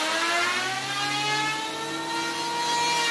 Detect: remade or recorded recorded